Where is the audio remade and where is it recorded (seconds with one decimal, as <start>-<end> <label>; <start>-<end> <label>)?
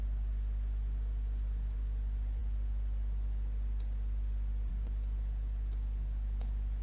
0.0-6.8 recorded